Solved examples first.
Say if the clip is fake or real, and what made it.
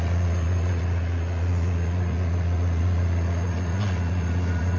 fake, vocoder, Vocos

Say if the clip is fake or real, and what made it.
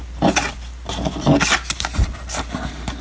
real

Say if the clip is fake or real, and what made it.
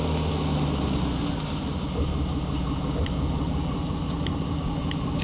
real